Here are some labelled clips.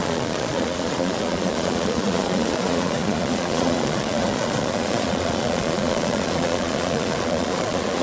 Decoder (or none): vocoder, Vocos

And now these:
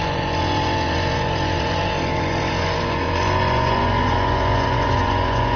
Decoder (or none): vocoder, Vocos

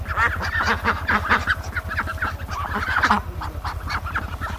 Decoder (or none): none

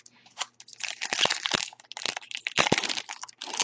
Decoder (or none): none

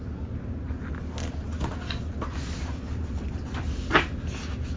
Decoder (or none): none